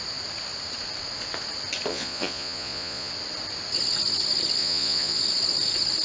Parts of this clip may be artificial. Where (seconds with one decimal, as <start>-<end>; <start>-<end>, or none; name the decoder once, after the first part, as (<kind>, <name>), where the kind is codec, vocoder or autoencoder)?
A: 1.9-3.1 (vocoder, Vocos); 4.6-5.2